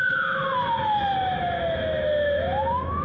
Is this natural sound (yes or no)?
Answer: no